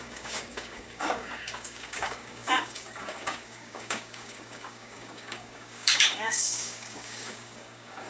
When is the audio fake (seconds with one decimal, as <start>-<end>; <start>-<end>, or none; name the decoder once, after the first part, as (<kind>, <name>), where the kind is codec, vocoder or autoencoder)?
0.0-8.1 (codec, DAC)